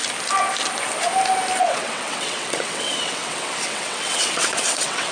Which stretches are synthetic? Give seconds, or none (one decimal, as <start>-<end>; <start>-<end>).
1.6-5.1